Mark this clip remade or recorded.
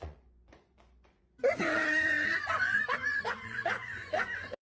remade